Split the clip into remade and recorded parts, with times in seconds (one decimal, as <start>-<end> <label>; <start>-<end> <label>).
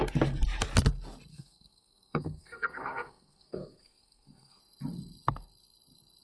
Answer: 0.0-1.3 recorded; 1.3-4.6 remade; 4.6-6.2 recorded